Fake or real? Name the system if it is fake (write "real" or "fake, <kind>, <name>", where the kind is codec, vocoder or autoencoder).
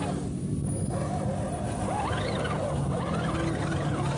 real